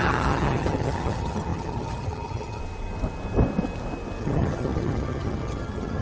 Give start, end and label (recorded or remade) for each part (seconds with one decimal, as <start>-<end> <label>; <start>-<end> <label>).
0.0-2.6 remade; 2.6-4.2 recorded; 4.2-6.0 remade